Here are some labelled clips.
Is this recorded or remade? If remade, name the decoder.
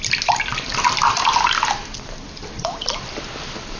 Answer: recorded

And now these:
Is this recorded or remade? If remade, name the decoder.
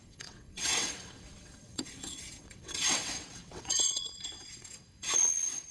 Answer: remade, vocoder, WaveNeXt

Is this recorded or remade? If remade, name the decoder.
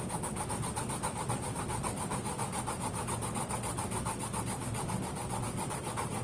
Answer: recorded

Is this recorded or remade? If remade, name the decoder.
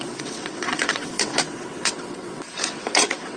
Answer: remade, vocoder, WaveNeXt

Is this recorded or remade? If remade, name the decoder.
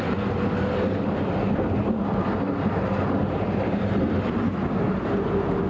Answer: recorded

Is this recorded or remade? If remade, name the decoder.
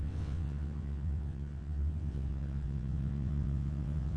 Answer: remade, vocoder, WaveNeXt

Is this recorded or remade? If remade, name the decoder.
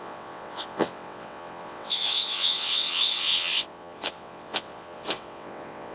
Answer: remade, vocoder, WaveNeXt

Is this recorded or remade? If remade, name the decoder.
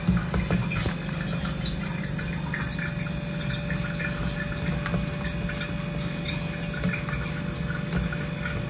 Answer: recorded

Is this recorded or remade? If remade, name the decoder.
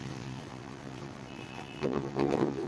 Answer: remade, vocoder, WaveNeXt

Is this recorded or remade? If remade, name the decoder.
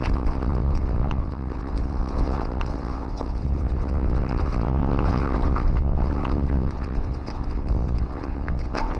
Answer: remade, vocoder, WaveNeXt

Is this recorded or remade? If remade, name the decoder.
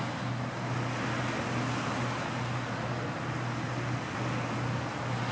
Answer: recorded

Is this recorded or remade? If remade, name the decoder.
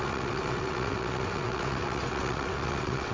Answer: remade, vocoder, WaveNeXt